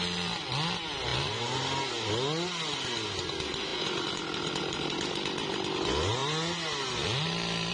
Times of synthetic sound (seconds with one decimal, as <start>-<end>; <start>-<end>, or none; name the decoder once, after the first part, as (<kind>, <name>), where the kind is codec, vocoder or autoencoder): none